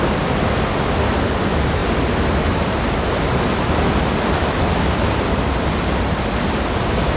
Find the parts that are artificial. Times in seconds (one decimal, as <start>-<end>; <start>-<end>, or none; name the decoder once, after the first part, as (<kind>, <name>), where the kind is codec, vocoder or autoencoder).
none